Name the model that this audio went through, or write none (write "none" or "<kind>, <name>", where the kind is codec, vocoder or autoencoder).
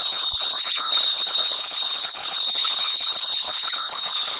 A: codec, HILCodec